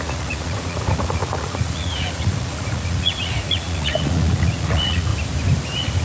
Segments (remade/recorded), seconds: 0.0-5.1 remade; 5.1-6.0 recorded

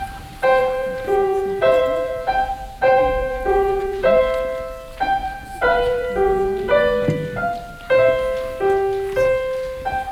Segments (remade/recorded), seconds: 0.0-0.6 recorded; 0.6-4.2 remade; 4.2-5.2 recorded; 5.2-6.7 remade; 6.7-10.1 recorded

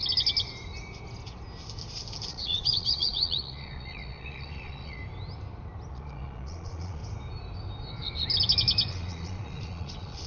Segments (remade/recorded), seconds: 0.0-2.3 recorded; 2.3-5.0 remade; 5.0-5.9 recorded; 5.9-7.0 remade; 7.0-8.9 recorded; 8.9-10.3 remade

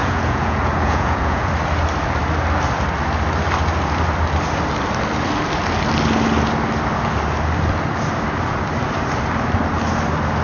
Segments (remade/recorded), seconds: 0.0-1.5 remade; 1.5-10.4 recorded

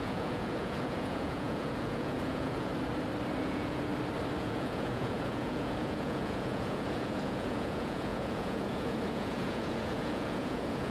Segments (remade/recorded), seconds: 0.0-2.7 remade; 2.7-3.4 recorded; 3.4-3.9 remade; 3.9-4.4 recorded; 4.4-10.9 remade

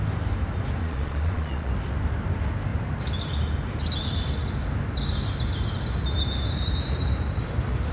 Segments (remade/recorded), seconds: 0.0-0.8 recorded; 0.8-1.7 remade; 1.7-7.9 recorded